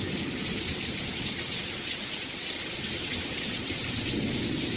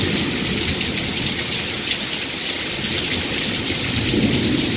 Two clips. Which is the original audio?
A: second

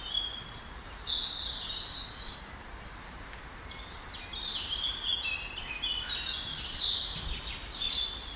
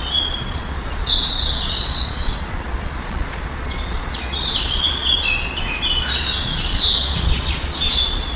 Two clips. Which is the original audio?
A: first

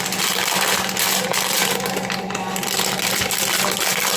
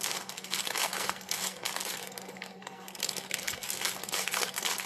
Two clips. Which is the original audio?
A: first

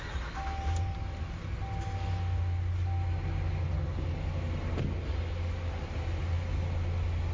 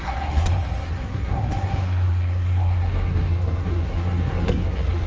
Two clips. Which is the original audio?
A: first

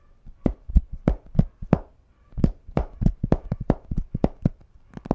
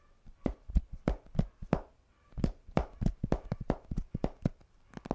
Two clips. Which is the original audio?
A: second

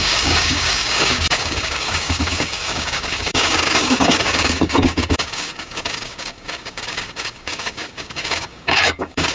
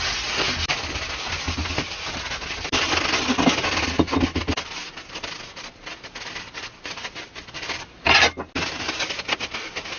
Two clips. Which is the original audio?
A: second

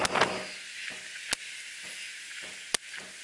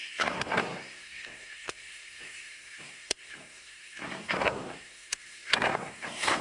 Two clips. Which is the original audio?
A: first